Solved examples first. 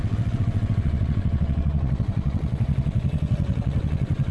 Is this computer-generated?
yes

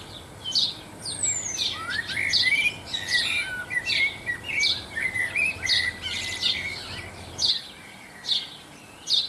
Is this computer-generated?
no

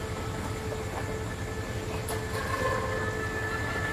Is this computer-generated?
no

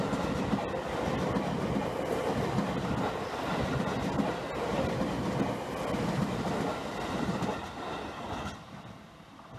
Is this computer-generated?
no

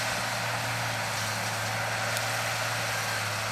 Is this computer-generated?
no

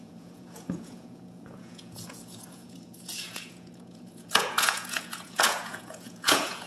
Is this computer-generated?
yes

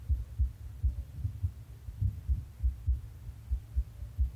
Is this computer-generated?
no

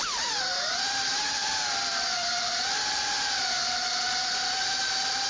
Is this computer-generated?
yes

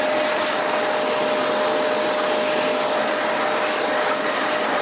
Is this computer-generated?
no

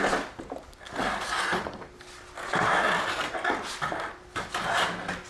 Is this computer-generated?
no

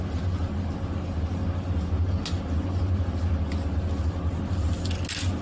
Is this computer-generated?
no